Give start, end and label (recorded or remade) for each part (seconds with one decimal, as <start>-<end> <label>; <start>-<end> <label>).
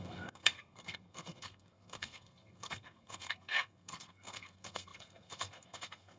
0.0-6.2 remade